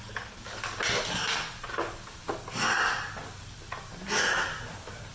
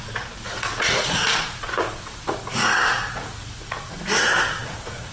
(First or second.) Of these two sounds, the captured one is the first